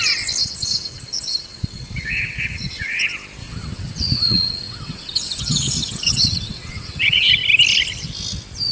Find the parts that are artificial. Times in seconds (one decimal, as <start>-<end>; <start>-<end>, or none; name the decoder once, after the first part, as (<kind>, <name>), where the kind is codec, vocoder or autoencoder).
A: 0.4-3.0 (vocoder, WaveNeXt); 3.4-7.3